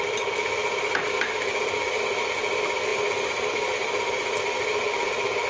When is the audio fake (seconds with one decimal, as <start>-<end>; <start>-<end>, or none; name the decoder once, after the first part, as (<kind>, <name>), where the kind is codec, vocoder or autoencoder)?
none